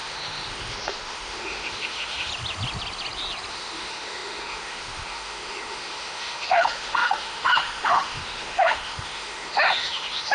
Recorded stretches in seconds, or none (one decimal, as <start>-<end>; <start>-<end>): 2.3-3.5